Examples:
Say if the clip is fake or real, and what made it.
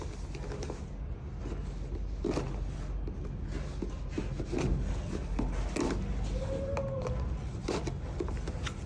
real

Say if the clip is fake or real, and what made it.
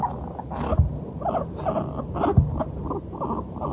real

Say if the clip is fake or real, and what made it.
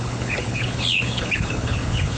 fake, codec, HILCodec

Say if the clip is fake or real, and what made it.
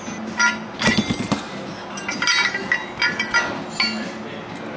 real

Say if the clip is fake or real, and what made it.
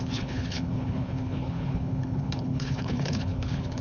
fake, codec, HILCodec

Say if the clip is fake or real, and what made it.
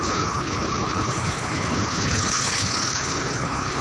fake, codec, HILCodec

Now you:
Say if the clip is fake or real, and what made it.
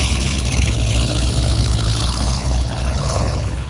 fake, codec, HILCodec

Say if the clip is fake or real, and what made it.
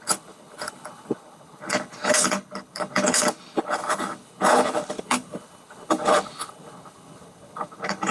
fake, codec, HILCodec